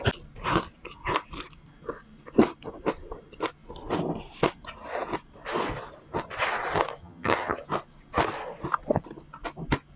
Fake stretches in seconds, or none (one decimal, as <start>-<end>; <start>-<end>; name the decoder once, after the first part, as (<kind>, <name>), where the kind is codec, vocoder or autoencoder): 7.0-7.6 (vocoder, HiFi-GAN)